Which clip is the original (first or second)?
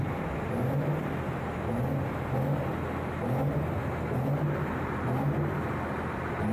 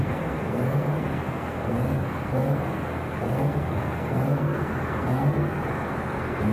first